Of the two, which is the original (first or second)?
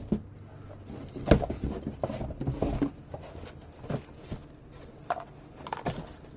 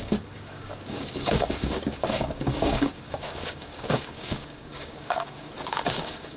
first